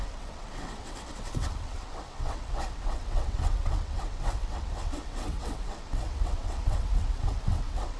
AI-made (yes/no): yes